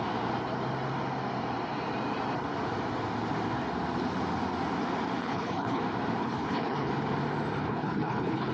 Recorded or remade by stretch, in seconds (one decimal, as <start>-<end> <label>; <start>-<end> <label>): 0.0-5.2 recorded; 5.2-5.8 remade; 5.8-6.2 recorded; 6.2-6.9 remade; 6.9-7.6 recorded; 7.6-8.5 remade